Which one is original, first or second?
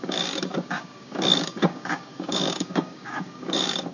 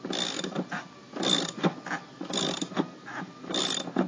second